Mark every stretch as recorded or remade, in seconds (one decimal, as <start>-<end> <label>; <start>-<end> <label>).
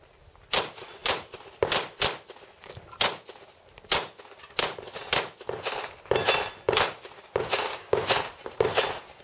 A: 0.0-7.7 recorded; 7.7-8.2 remade; 8.2-9.2 recorded